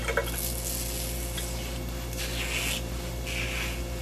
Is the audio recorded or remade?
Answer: recorded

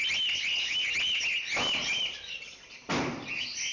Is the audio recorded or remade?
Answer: recorded